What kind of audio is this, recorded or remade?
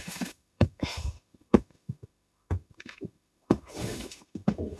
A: remade